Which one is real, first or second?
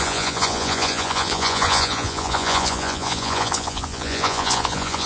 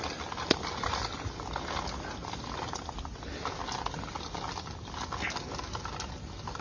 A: second